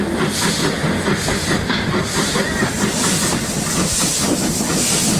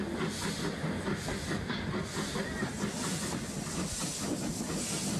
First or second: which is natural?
second